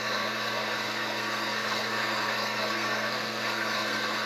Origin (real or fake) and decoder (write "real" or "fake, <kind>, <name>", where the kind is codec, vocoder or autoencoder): fake, codec, SNAC